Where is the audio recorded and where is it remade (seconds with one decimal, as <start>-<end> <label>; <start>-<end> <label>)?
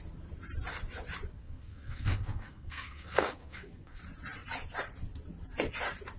0.0-1.4 recorded; 1.4-4.0 remade; 4.0-6.2 recorded